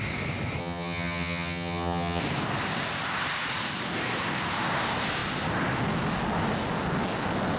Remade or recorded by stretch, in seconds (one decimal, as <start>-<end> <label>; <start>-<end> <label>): 0.0-0.6 recorded; 0.6-2.2 remade; 2.2-7.6 recorded